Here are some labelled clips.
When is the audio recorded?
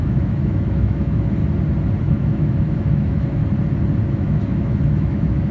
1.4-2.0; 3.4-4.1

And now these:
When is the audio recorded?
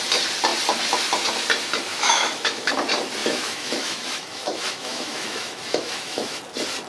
0.0-1.9; 2.7-3.2; 6.4-6.9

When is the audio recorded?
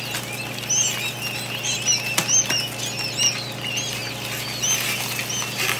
0.0-5.8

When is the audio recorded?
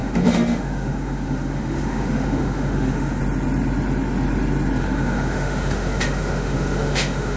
3.2-4.8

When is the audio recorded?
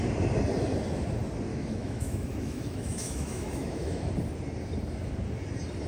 0.0-1.5; 4.1-5.9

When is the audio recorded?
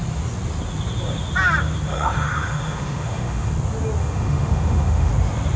0.0-1.9; 3.5-4.0; 5.1-5.6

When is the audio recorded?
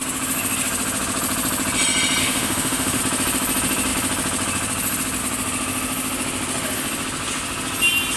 0.0-2.2; 3.0-8.2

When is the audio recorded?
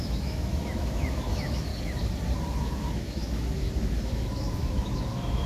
1.7-2.6